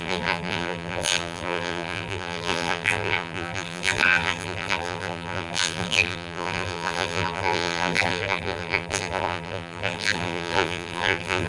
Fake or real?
fake